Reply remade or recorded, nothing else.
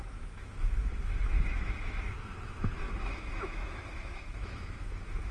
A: remade